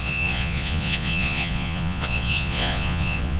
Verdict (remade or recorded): remade